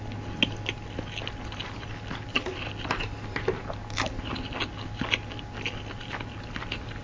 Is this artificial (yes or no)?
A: no